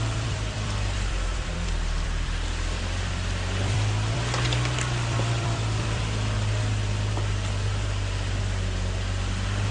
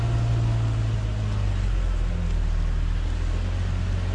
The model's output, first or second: first